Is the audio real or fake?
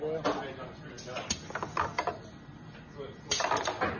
real